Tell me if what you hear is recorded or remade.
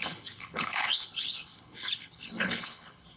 remade